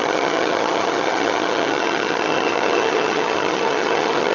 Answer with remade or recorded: remade